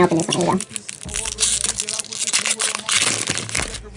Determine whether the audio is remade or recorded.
recorded